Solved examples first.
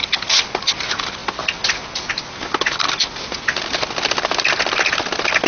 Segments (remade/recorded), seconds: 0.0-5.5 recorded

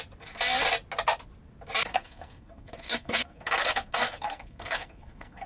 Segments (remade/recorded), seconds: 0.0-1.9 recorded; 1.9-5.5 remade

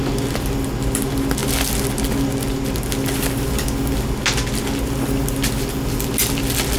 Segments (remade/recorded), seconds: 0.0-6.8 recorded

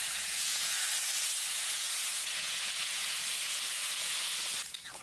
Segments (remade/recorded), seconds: 0.0-0.9 remade; 0.9-1.5 recorded; 1.5-5.0 remade